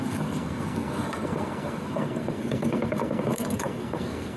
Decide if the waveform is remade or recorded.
remade